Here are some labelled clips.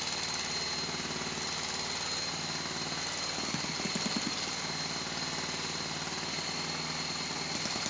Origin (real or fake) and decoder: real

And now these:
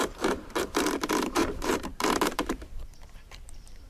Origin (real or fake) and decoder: fake, vocoder, BigVGAN v2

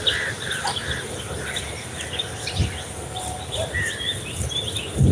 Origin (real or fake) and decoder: real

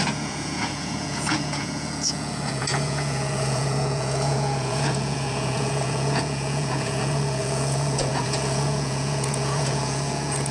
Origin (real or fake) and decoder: fake, vocoder, Vocos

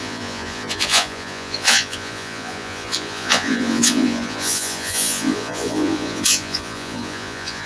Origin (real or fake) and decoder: fake, vocoder, Vocos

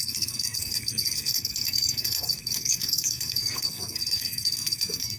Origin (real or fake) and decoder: fake, codec, SNAC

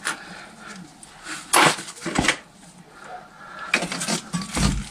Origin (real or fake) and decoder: real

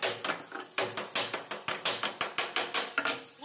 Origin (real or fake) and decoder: real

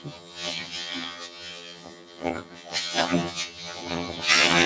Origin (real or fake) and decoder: fake, vocoder, HiFi-GAN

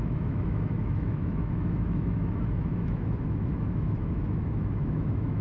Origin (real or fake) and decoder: fake, autoencoder, DAC-VAE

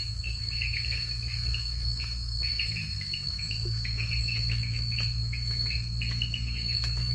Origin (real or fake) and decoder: fake, autoencoder, DAC-VAE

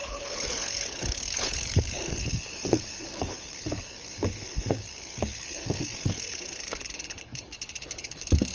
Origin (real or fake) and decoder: fake, codec, HILCodec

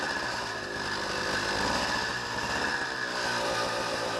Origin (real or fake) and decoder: real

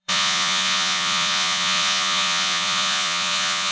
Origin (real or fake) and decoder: fake, vocoder, Vocos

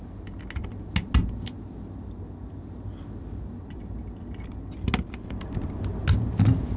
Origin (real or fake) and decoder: real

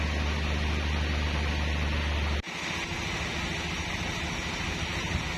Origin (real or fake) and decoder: real